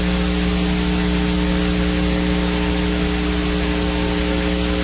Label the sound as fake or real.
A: real